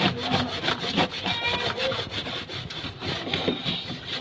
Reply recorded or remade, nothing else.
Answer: recorded